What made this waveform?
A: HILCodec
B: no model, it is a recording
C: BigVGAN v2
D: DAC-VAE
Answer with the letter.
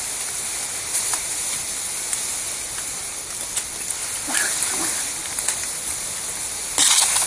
B